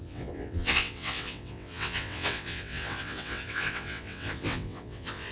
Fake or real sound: fake